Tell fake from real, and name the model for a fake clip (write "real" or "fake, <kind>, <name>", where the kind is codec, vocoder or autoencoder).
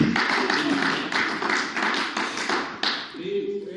real